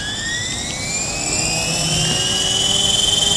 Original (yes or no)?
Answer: yes